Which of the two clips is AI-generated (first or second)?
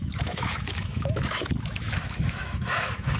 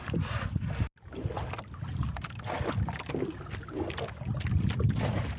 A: first